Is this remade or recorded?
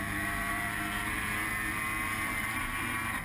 remade